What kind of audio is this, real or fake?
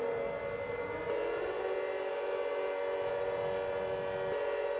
real